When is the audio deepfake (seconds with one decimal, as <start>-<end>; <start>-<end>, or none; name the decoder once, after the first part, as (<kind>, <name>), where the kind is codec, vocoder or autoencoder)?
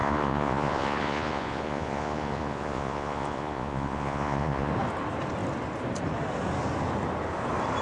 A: 0.0-4.7 (vocoder, Vocos)